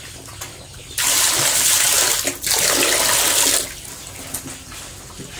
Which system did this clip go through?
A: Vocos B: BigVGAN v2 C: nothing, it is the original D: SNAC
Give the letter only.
C